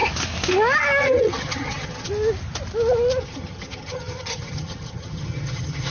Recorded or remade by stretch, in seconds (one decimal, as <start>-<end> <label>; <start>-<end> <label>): 0.0-1.0 recorded; 1.0-2.1 remade; 2.1-3.2 recorded; 3.2-5.9 remade